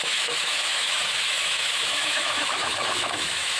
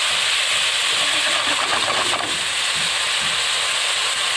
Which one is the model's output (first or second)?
first